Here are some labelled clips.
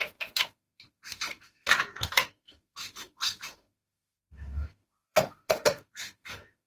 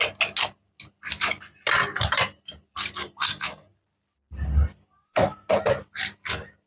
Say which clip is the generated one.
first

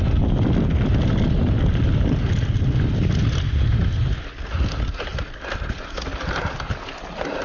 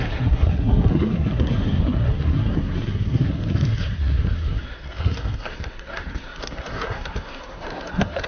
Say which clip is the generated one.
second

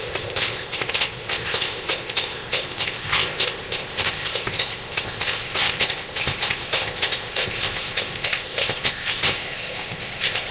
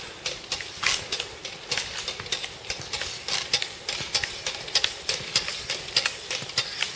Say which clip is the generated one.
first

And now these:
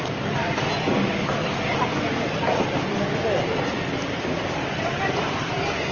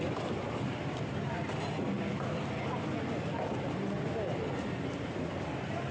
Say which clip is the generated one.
first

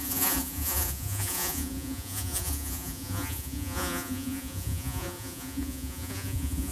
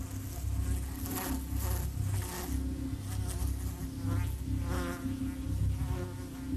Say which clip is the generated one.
first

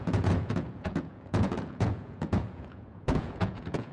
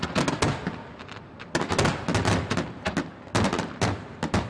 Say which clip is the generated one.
first